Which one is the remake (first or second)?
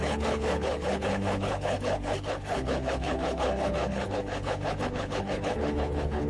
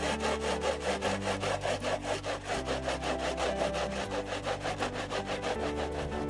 first